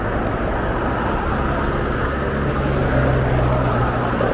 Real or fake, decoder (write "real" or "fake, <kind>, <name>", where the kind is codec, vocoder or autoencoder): real